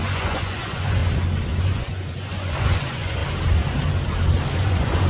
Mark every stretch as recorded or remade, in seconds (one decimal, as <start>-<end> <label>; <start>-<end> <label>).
0.0-1.0 remade; 1.0-1.6 recorded; 1.6-3.2 remade; 3.2-4.6 recorded; 4.6-5.1 remade